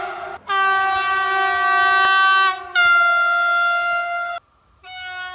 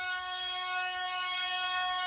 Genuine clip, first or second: first